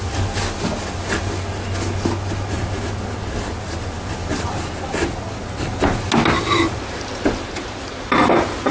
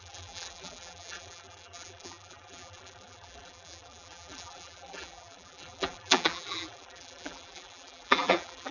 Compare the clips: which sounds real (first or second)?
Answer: first